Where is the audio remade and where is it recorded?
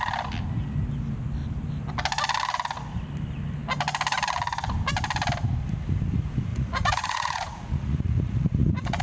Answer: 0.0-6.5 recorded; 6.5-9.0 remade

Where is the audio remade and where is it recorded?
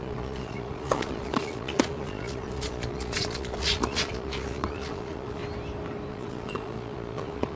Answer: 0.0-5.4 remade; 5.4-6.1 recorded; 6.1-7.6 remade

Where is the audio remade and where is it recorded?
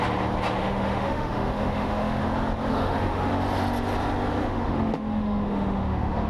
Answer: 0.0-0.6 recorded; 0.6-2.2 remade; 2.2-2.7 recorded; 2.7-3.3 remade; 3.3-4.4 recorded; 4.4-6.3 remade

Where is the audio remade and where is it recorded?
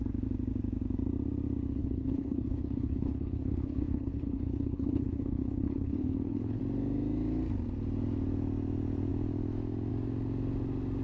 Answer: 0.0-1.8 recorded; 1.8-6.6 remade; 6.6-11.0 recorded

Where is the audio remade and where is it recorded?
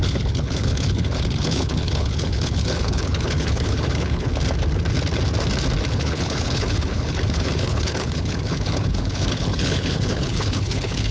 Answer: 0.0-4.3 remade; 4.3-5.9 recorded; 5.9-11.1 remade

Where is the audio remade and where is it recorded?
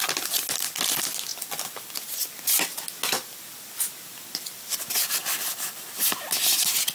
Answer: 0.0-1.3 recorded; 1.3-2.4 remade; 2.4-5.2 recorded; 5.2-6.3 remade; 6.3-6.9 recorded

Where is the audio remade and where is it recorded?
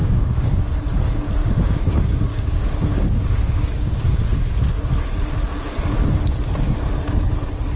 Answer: 0.0-0.6 remade; 0.6-1.4 recorded; 1.4-4.1 remade; 4.1-7.8 recorded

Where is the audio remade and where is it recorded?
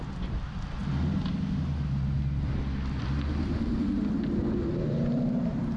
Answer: 0.0-0.8 remade; 0.8-3.0 recorded; 3.0-3.5 remade; 3.5-4.3 recorded; 4.3-5.8 remade